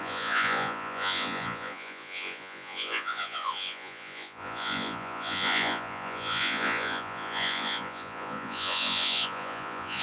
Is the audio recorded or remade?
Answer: remade